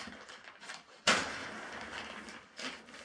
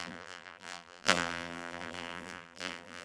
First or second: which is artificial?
second